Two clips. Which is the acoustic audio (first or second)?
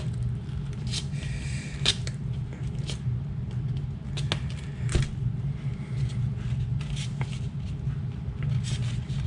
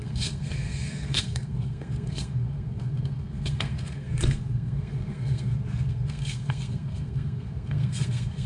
first